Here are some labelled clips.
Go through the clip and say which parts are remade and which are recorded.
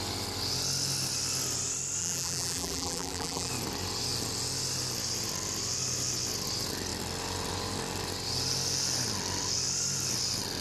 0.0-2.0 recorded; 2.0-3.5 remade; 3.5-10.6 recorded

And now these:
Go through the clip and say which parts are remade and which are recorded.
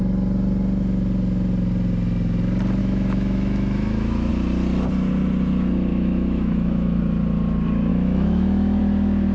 0.0-2.8 recorded; 2.8-4.3 remade; 4.3-5.9 recorded; 5.9-7.0 remade; 7.0-7.9 recorded; 7.9-8.8 remade; 8.8-9.3 recorded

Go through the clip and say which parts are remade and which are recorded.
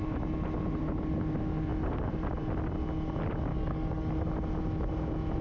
0.0-3.5 recorded; 3.5-4.1 remade; 4.1-5.4 recorded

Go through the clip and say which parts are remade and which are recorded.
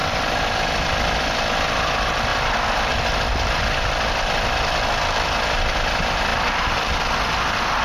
0.0-1.2 remade; 1.2-2.3 recorded; 2.3-3.6 remade; 3.6-6.3 recorded; 6.3-7.8 remade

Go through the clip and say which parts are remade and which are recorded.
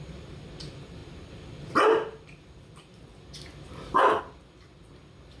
0.0-5.4 recorded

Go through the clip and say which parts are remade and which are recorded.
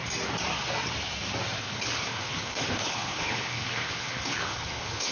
0.0-1.6 recorded; 1.6-5.1 remade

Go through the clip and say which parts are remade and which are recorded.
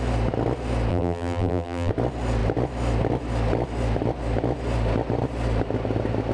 0.0-0.9 recorded; 0.9-1.9 remade; 1.9-6.3 recorded